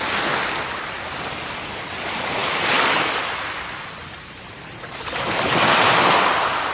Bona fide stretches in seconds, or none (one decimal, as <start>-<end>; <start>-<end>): 0.0-4.0